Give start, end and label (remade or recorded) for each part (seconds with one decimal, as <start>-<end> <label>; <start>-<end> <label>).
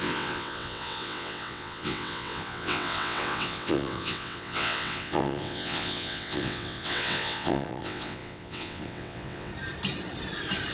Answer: 0.0-9.5 remade; 9.5-10.7 recorded